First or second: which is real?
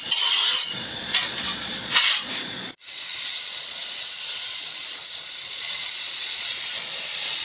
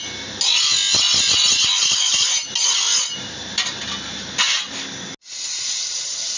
second